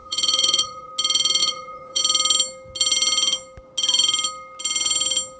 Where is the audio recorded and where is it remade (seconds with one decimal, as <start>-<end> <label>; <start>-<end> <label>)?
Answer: 0.0-0.9 remade; 0.9-1.4 recorded; 1.4-2.0 remade; 2.0-5.4 recorded